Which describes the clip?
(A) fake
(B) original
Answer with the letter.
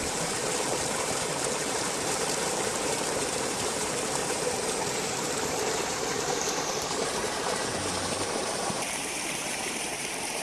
A